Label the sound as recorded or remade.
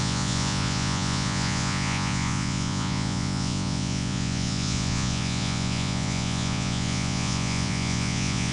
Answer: remade